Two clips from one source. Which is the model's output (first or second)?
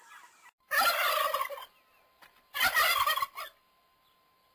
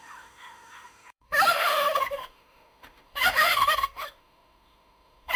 second